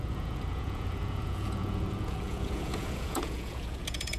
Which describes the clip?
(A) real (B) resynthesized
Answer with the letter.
B